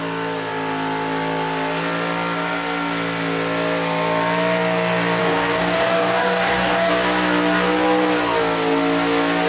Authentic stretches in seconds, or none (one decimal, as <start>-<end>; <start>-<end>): 0.0-5.2; 6.9-9.5